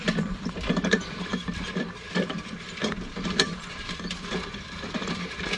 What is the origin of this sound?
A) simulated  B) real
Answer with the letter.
A